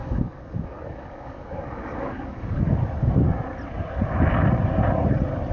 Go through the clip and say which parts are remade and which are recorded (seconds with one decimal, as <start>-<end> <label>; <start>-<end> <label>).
0.0-2.6 remade; 2.6-5.5 recorded